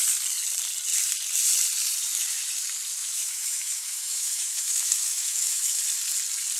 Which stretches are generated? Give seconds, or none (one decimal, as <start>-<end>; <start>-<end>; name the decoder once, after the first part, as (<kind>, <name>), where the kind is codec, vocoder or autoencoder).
3.0-5.8 (autoencoder, DAC-VAE)